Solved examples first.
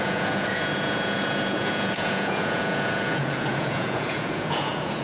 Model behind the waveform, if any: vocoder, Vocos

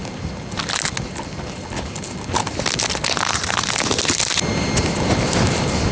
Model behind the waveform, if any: none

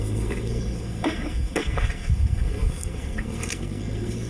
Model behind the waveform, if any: codec, SNAC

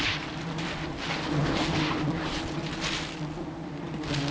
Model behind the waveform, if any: none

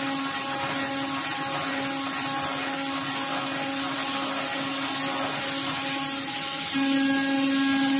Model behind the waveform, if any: none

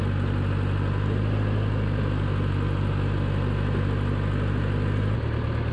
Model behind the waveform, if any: none